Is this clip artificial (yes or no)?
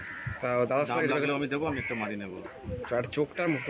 yes